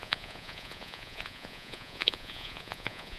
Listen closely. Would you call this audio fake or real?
fake